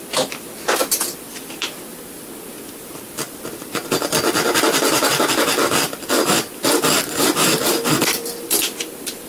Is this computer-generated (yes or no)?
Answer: yes